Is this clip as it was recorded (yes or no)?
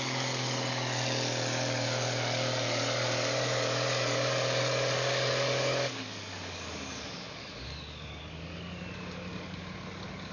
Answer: no